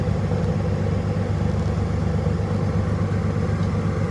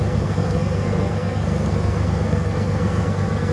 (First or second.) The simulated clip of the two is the second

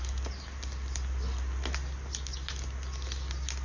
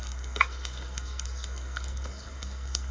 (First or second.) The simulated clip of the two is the second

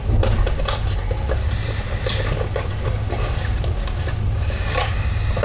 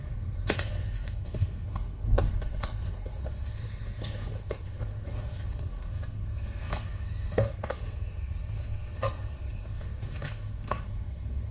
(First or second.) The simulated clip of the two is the second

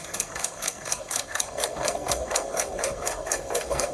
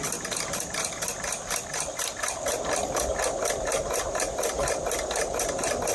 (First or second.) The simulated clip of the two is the first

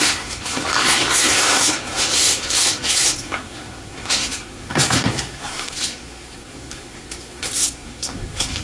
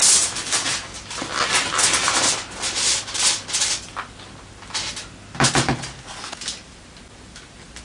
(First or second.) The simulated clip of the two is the first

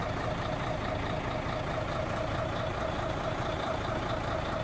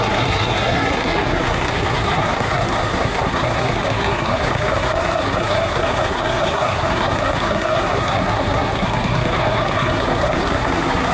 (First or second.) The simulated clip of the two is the second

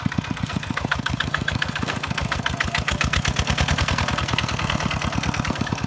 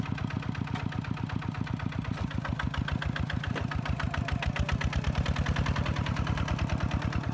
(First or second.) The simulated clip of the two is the first